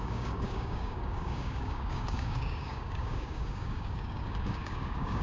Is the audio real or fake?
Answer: fake